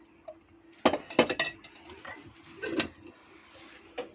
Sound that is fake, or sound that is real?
real